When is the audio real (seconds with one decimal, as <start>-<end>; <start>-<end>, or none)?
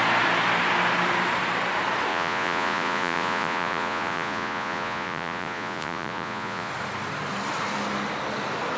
0.0-2.1; 6.7-8.8